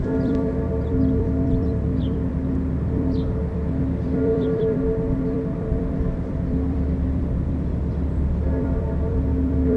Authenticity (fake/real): fake